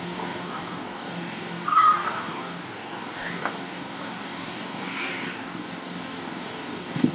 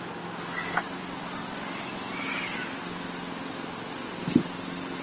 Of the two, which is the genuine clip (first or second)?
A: second